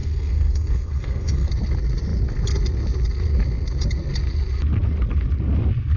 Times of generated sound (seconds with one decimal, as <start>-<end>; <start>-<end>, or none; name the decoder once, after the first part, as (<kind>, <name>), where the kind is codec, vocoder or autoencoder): 0.0-1.5 (codec, SNAC)